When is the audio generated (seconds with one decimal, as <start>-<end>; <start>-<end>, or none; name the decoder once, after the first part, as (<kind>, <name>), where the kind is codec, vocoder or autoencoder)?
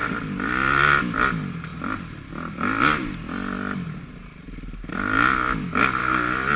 none